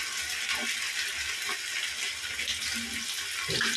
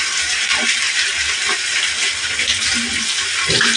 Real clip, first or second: first